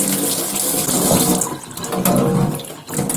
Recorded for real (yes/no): yes